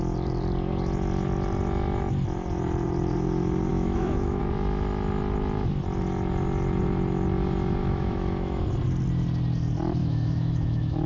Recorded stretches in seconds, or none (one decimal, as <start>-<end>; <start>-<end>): 0.0-3.7; 4.4-7.8; 8.6-10.0